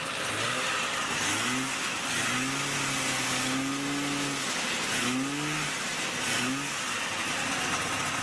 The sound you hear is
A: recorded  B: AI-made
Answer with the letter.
A